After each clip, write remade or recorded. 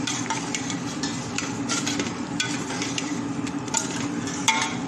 remade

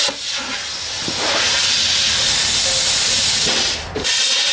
recorded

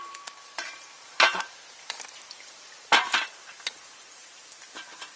remade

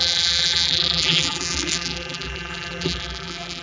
remade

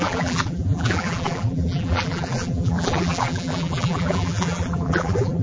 remade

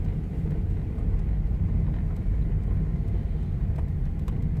recorded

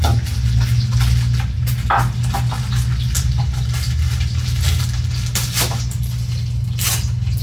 recorded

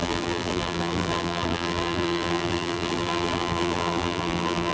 remade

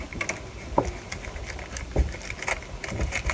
recorded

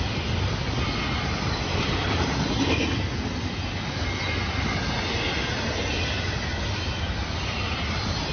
recorded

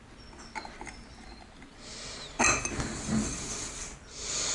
recorded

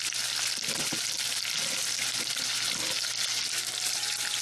recorded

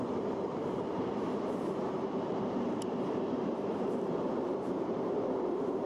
remade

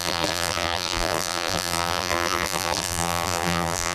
remade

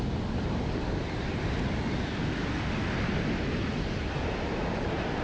recorded